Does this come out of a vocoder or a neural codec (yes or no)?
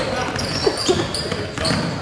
no